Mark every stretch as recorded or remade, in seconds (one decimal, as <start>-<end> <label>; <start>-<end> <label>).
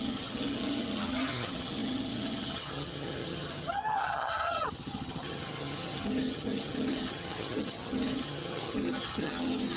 0.0-9.8 remade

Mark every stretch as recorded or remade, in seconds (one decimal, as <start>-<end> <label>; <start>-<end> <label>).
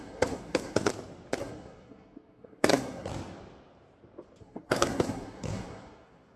0.0-0.9 remade; 0.9-1.4 recorded; 1.4-3.1 remade; 3.1-4.4 recorded; 4.4-6.4 remade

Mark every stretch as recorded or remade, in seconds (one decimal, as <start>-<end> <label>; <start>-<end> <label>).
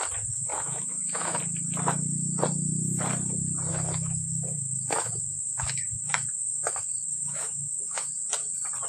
0.0-0.5 recorded; 0.5-1.4 remade; 1.4-3.7 recorded; 3.7-8.1 remade; 8.1-8.9 recorded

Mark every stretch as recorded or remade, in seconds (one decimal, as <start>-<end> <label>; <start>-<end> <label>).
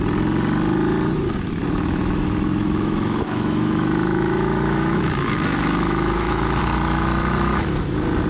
0.0-1.6 recorded; 1.6-6.6 remade; 6.6-8.3 recorded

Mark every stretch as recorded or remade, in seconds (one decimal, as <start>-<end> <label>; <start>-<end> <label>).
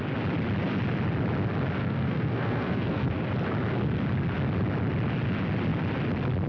0.0-1.8 recorded; 1.8-3.1 remade; 3.1-6.5 recorded